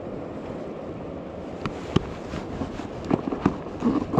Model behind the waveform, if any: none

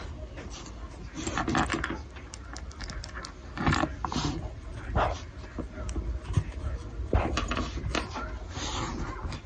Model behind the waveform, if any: none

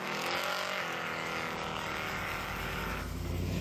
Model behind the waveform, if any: codec, DAC